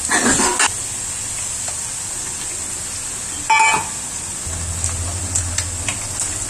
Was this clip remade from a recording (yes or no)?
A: no